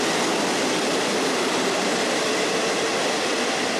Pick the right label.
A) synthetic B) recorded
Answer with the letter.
B